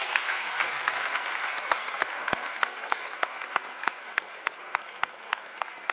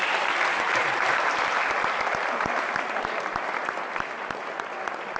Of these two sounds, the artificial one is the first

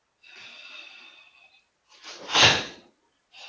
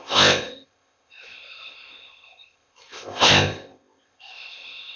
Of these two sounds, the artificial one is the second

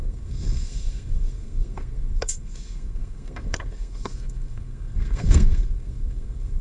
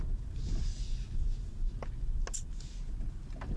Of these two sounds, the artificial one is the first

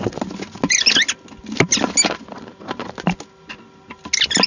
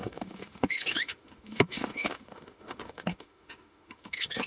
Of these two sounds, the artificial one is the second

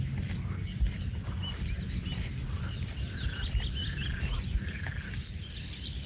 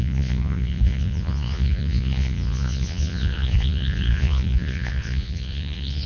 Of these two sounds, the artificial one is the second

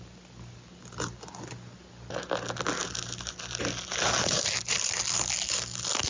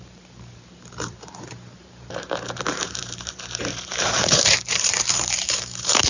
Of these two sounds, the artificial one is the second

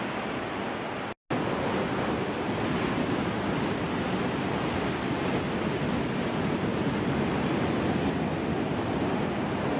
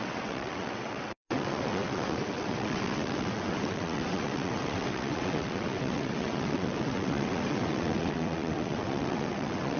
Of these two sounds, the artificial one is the second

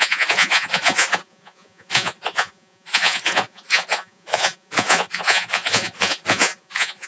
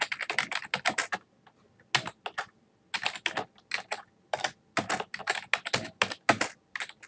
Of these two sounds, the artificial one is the first